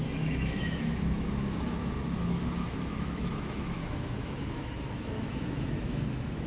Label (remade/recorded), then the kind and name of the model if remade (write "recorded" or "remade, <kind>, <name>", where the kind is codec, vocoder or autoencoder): remade, autoencoder, DAC-VAE